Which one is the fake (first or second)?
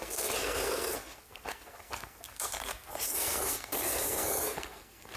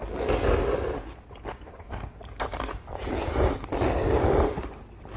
first